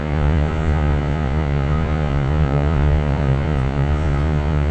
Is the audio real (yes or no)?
no